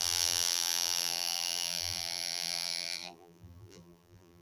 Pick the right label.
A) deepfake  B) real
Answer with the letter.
A